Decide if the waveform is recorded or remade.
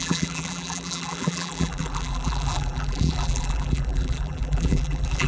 remade